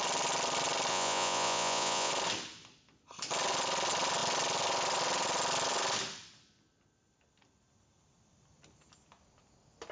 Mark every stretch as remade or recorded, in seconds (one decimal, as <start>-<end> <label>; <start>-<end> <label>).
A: 0.0-0.9 recorded; 0.9-2.1 remade; 2.1-9.9 recorded

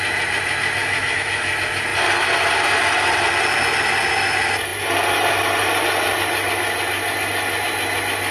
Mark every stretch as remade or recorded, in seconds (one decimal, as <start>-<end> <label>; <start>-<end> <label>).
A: 0.0-0.8 recorded; 0.8-1.5 remade; 1.5-8.3 recorded

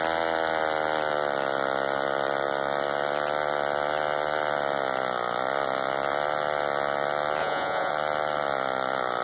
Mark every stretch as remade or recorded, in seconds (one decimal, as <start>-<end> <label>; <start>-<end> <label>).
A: 0.0-7.4 recorded; 7.4-7.9 remade; 7.9-9.2 recorded

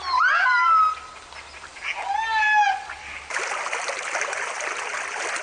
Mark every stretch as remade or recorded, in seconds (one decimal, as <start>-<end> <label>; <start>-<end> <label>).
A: 0.0-5.4 recorded

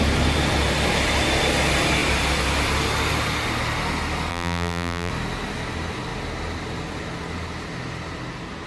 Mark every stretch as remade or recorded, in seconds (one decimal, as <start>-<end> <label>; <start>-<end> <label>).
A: 0.0-4.3 recorded; 4.3-5.1 remade; 5.1-8.7 recorded

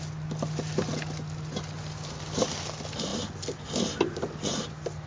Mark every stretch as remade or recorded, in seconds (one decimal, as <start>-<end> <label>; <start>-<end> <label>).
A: 0.0-5.1 recorded